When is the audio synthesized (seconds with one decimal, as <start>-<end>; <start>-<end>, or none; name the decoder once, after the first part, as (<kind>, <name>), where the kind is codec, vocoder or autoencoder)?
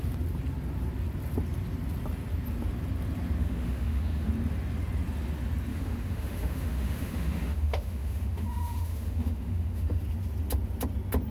3.4-4.3 (autoencoder, DAC-VAE); 5.7-10.0